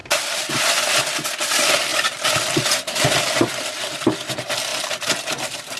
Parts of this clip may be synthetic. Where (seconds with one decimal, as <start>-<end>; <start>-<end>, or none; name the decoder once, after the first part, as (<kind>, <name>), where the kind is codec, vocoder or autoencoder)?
0.0-0.6 (vocoder, BigVGAN v2); 4.7-5.8